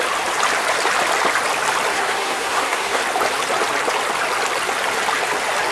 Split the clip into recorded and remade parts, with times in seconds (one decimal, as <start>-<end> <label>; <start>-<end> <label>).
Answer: 0.0-1.9 recorded; 1.9-3.0 remade; 3.0-5.7 recorded